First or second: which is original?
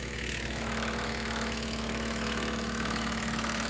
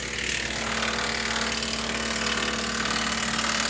second